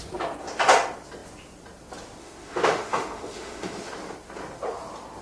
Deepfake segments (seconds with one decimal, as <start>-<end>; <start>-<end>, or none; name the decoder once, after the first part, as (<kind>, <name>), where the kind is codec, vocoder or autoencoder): 2.2-3.9 (autoencoder, DAC-VAE)